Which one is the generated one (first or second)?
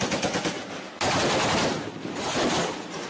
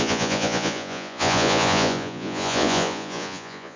second